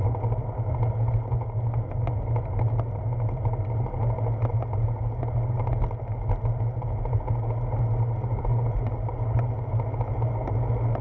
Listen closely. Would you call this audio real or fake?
real